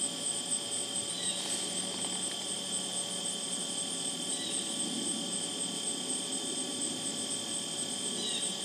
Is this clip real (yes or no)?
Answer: yes